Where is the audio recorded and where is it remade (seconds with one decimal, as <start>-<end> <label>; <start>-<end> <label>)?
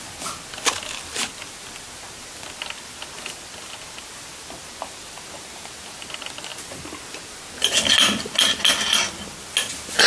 0.0-10.1 recorded